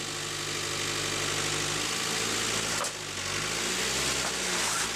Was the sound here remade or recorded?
recorded